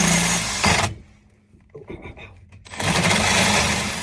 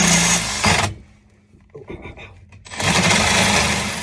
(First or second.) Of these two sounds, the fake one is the first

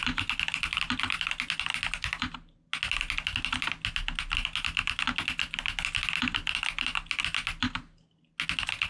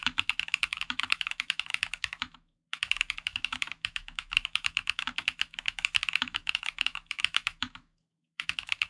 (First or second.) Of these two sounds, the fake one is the second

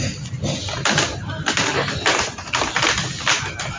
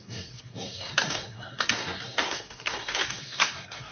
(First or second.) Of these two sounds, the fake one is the second